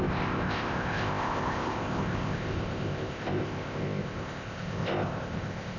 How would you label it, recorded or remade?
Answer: remade